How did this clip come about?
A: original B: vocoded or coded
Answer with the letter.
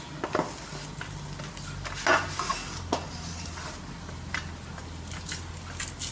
A